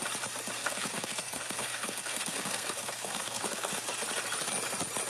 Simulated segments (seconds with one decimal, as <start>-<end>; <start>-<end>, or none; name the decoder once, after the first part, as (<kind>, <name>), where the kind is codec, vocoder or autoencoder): 0.6-3.7 (codec, SNAC)